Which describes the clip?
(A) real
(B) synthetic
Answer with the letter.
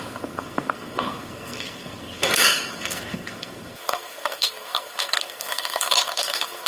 B